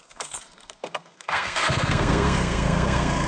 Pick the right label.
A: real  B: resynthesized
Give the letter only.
B